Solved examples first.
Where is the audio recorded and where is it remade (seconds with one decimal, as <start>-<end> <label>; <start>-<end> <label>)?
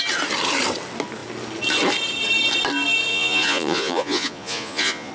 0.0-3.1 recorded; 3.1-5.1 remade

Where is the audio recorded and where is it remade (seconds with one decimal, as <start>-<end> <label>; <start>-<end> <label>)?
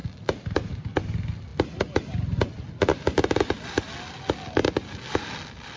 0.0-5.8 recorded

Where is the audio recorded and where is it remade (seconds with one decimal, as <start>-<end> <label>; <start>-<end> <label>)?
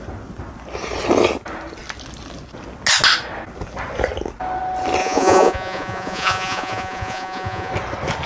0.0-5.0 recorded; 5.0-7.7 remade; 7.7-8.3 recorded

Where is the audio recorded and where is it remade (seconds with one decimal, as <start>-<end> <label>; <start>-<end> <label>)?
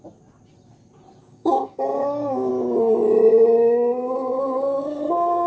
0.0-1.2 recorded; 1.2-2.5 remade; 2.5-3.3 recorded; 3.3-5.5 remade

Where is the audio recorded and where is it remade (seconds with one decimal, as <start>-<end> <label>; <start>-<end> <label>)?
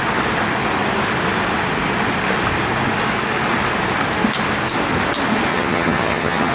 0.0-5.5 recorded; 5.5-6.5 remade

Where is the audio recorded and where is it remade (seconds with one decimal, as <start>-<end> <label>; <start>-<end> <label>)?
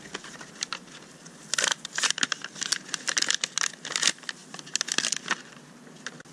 0.0-1.7 recorded; 1.7-3.3 remade; 3.3-6.3 recorded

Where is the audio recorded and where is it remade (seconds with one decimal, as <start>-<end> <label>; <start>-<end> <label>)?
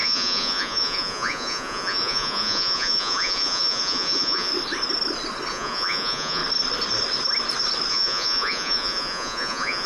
0.0-4.5 remade; 4.5-5.5 recorded; 5.5-6.4 remade; 6.4-7.9 recorded; 7.9-9.9 remade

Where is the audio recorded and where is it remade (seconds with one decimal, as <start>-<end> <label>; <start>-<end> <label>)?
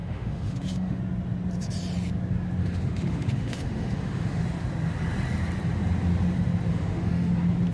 0.0-1.0 remade; 1.0-2.6 recorded; 2.6-4.4 remade; 4.4-6.7 recorded; 6.7-7.3 remade; 7.3-7.7 recorded